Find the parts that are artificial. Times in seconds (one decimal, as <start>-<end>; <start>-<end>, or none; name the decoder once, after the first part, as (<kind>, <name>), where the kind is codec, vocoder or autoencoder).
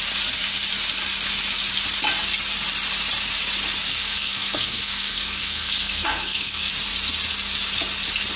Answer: 3.9-6.7 (codec, SNAC)